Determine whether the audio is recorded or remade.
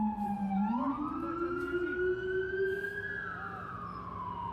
recorded